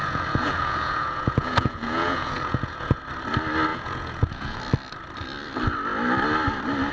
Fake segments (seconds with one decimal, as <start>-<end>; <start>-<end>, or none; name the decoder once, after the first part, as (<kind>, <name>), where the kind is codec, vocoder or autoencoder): 0.0-3.0 (vocoder, Vocos); 3.7-4.6

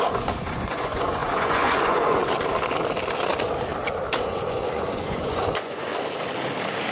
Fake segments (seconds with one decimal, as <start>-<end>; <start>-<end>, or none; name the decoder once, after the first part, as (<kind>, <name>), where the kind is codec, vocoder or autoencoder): 0.0-2.2 (vocoder, Vocos); 4.2-5.9

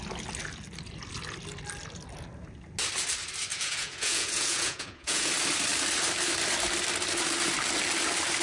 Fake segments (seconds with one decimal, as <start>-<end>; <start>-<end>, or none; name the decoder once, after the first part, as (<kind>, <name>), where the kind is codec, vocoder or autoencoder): 3.5-5.3 (vocoder, Vocos)

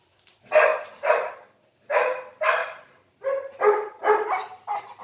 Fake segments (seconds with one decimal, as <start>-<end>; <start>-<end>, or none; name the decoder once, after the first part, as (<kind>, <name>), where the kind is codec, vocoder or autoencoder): none

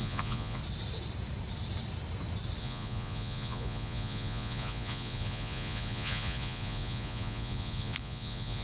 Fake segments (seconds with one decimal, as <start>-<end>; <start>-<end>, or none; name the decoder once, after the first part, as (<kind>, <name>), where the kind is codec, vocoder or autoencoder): 0.0-0.6 (vocoder, Vocos); 2.6-8.6

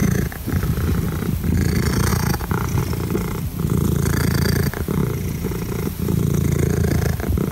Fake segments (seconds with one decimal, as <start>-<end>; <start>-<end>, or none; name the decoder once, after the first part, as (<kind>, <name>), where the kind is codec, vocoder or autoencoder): 0.0-0.5 (vocoder, Vocos); 2.1-2.8; 5.0-5.9